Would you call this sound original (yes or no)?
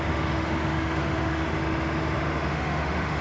no